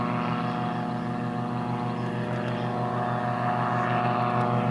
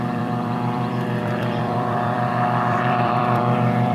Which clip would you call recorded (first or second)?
first